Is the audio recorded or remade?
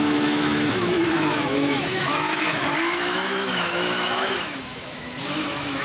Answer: remade